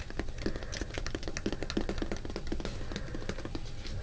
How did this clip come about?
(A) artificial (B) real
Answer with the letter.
B